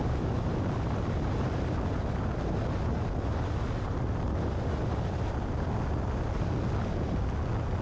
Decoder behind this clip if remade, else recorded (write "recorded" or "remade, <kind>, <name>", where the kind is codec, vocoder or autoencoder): recorded